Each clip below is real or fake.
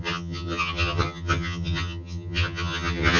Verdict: fake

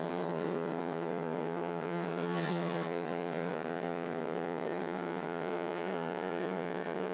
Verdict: fake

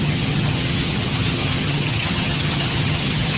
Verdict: fake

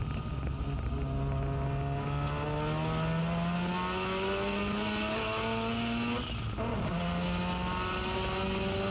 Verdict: real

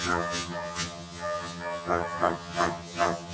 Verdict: fake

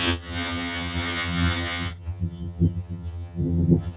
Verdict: fake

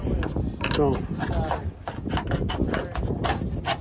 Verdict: real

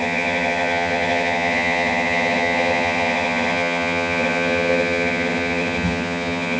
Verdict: fake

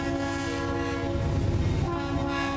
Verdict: real